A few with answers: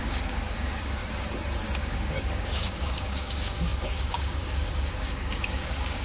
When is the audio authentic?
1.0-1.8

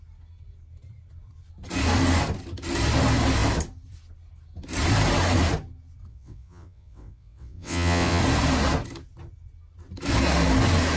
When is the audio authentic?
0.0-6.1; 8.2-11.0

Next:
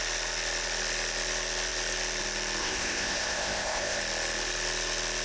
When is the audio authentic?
0.0-2.6; 4.0-5.2

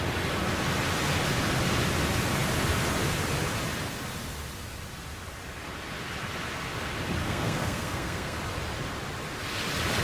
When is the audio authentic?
0.0-7.2; 8.4-10.0

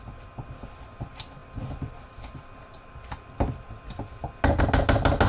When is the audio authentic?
0.0-5.3

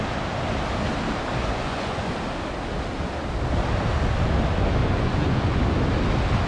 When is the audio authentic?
0.0-1.4; 2.1-4.8; 5.6-6.5

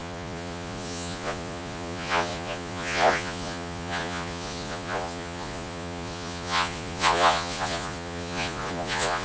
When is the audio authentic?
none

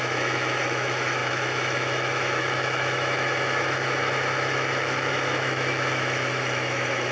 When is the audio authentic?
none